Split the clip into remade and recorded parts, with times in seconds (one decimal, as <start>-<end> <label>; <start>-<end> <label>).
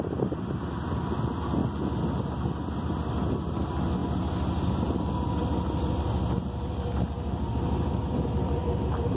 0.0-9.2 recorded